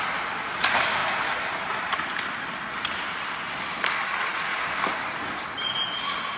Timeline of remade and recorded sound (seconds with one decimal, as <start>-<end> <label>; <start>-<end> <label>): 0.0-6.4 recorded